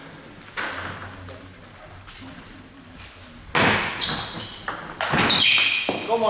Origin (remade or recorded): recorded